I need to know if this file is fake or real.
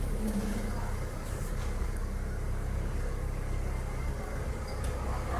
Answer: fake